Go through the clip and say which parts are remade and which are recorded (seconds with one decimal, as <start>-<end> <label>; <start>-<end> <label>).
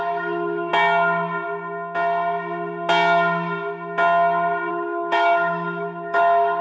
0.0-0.7 remade; 0.7-4.7 recorded; 4.7-6.6 remade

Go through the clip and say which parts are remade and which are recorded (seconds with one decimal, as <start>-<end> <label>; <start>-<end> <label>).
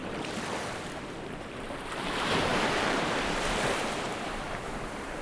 0.0-2.0 recorded; 2.0-5.2 remade